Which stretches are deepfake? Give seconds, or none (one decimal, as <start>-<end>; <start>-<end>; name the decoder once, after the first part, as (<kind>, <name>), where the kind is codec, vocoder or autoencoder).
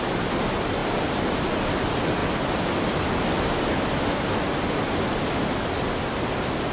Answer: none